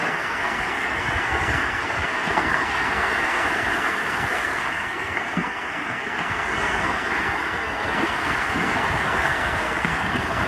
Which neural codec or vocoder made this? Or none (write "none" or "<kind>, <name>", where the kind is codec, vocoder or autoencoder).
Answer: codec, SNAC